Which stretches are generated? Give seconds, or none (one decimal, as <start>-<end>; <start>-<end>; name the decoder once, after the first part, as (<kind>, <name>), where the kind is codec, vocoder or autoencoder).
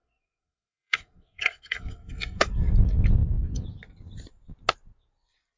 0.0-2.5 (codec, SNAC)